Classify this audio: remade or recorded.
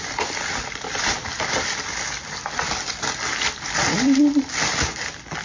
remade